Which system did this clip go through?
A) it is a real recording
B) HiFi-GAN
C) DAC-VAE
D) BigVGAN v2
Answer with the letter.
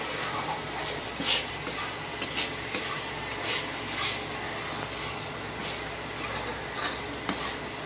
A